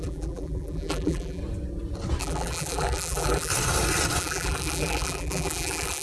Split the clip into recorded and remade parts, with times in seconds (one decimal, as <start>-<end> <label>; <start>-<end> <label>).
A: 0.0-1.4 remade; 1.4-2.2 recorded; 2.2-3.5 remade; 3.5-4.2 recorded; 4.2-6.0 remade